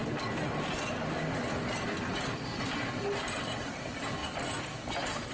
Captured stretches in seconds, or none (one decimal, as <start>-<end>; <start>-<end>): 0.0-3.2; 4.2-5.3